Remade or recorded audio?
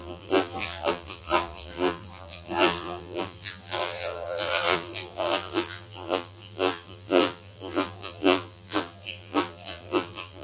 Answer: remade